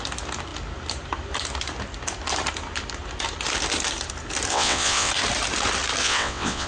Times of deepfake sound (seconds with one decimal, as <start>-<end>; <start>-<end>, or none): 4.5-5.1; 6.0-6.7